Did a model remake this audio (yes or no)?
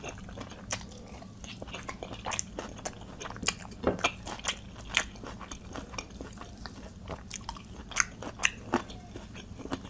no